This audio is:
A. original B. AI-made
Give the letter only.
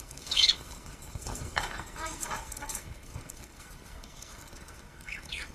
B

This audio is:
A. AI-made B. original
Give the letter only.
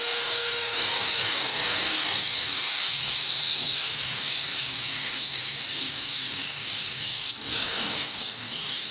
A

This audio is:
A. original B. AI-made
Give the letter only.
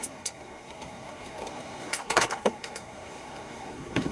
B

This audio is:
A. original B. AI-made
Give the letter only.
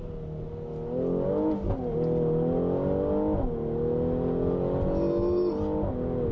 A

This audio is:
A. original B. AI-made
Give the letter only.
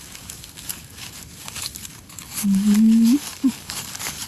B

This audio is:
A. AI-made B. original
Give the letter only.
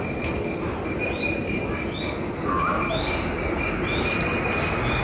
B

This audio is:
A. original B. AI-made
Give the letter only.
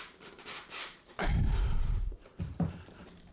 B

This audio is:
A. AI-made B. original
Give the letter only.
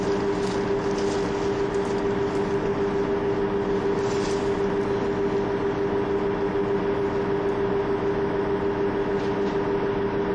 B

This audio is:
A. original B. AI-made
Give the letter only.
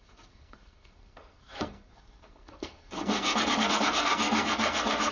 B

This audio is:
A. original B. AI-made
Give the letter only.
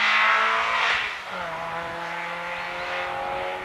A